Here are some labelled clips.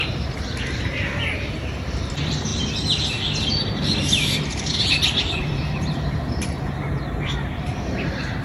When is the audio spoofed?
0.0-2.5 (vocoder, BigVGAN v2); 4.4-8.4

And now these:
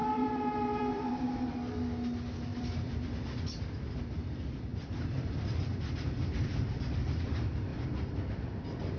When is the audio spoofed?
0.0-1.5 (vocoder, BigVGAN v2); 2.5-3.2; 4.7-7.3; 7.7-8.3